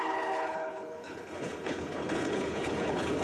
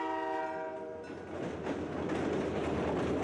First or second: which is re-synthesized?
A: first